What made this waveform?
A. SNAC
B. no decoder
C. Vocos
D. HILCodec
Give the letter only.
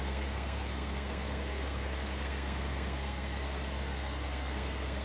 A